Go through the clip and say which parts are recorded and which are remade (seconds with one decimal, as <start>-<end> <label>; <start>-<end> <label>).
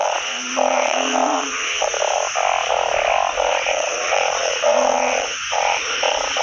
0.0-1.9 remade; 1.9-3.3 recorded; 3.3-6.4 remade